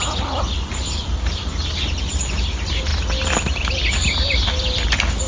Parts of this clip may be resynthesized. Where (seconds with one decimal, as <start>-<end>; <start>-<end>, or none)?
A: 0.0-2.9; 3.6-5.3